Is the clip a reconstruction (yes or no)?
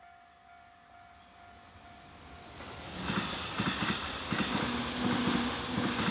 no